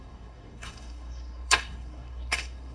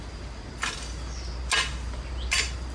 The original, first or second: second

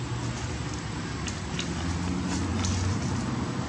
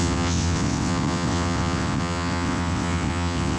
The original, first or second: first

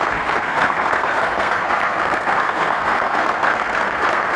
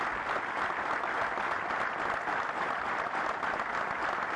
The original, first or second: second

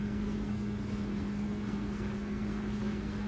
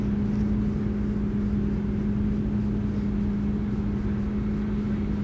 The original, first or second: second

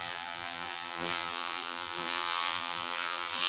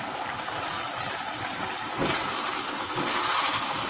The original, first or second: second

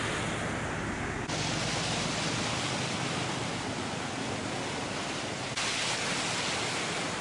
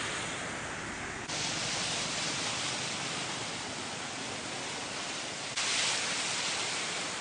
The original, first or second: first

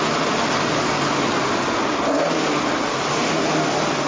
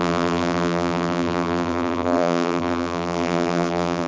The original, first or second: first